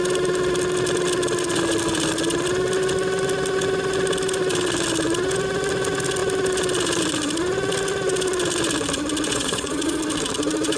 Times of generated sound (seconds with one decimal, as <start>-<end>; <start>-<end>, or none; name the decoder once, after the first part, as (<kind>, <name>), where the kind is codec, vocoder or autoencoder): 9.3-10.0 (vocoder, Vocos)